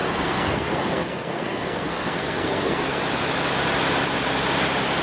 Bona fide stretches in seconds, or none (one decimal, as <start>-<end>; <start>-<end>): 3.0-5.0